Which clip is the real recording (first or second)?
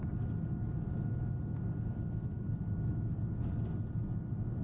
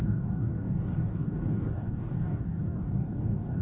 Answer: first